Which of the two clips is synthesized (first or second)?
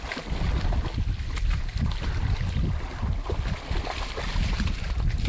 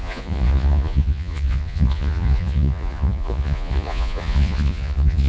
second